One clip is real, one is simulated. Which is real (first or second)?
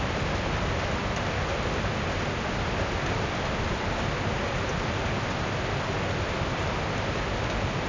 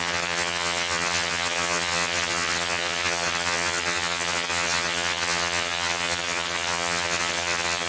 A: first